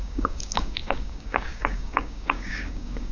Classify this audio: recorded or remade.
remade